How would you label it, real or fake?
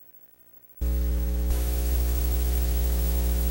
fake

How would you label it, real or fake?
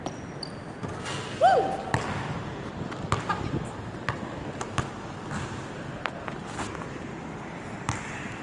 real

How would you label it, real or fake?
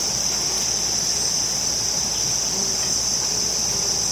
real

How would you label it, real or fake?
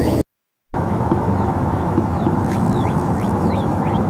fake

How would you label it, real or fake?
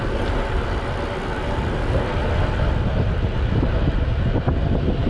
real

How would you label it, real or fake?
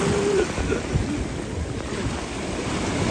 real